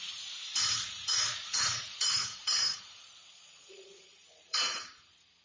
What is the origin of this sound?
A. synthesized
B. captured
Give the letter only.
A